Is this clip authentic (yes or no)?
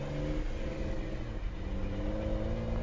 yes